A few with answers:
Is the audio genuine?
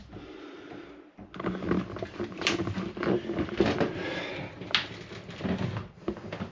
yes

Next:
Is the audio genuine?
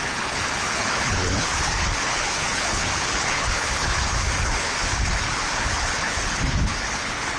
no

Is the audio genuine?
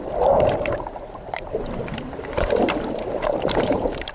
no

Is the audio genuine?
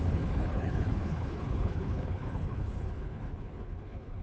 no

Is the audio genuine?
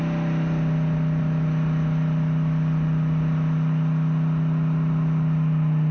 yes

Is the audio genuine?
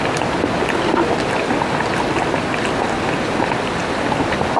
yes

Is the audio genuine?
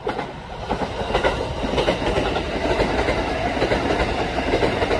yes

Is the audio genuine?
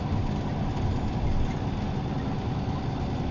yes